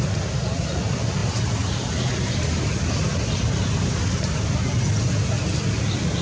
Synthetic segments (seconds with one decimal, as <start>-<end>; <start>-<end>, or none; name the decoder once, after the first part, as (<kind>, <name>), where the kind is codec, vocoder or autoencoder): none